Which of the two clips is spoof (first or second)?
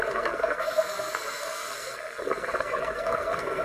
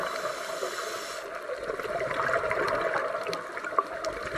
first